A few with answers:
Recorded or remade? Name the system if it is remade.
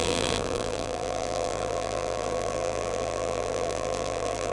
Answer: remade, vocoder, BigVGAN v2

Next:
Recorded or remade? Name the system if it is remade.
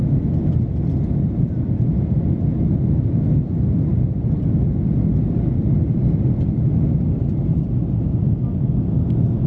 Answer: recorded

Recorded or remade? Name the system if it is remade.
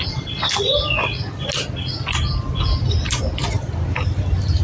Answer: recorded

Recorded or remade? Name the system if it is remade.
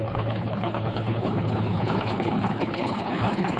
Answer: remade, codec, HILCodec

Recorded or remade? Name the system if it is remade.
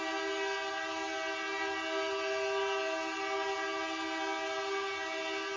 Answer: recorded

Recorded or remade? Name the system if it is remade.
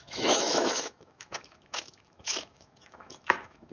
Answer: remade, autoencoder, DAC-VAE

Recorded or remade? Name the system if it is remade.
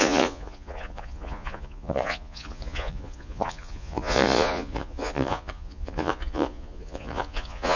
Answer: remade, vocoder, Vocos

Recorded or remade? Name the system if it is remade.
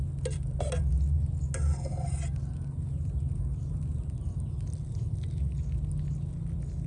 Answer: recorded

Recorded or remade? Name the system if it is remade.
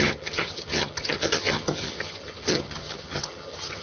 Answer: remade, vocoder, HiFi-GAN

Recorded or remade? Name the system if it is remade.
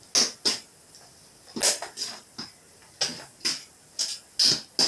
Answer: recorded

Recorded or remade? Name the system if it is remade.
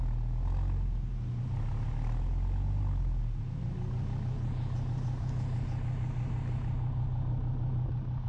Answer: recorded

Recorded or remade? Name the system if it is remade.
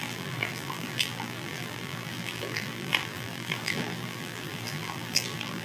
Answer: remade, vocoder, BigVGAN v2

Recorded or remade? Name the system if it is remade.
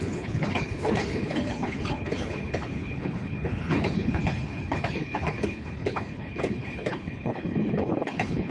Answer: remade, codec, HILCodec